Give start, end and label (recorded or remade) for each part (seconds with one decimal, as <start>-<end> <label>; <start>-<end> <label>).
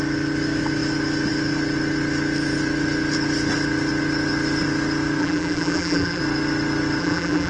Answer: 0.0-5.2 recorded; 5.2-6.2 remade; 6.2-7.0 recorded; 7.0-7.5 remade